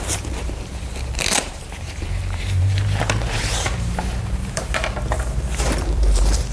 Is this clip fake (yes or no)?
yes